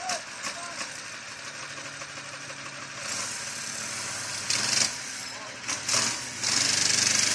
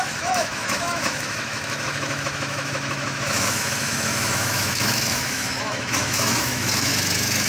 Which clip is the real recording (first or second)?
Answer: first